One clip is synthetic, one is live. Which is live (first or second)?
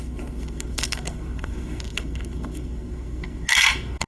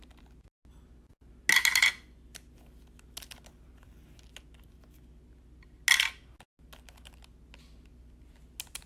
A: second